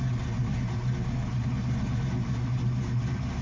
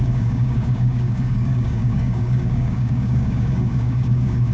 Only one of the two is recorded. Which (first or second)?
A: first